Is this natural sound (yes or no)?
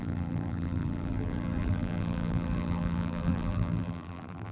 no